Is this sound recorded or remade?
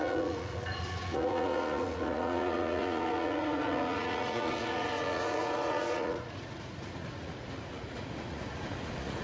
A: remade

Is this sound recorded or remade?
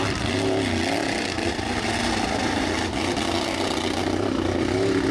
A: recorded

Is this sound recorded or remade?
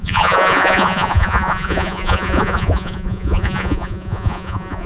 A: remade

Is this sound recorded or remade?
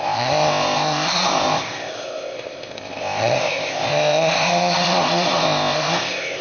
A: remade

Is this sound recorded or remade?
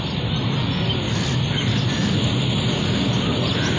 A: recorded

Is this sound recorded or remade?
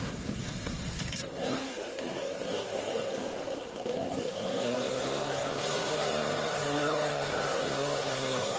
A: remade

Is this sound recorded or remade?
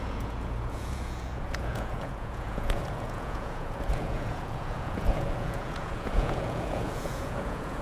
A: remade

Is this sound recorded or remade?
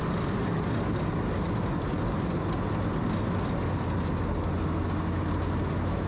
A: recorded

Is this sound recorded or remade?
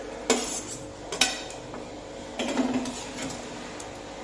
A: recorded